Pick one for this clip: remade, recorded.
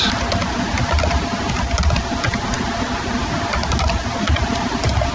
recorded